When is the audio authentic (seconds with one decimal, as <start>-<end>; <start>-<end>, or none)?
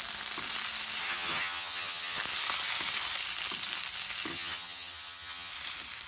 0.0-1.0; 2.2-4.3; 5.5-6.1